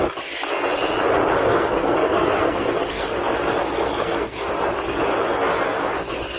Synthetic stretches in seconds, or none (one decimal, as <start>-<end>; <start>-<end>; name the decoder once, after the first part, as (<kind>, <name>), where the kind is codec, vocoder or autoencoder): 1.4-3.2 (codec, SNAC); 3.6-4.5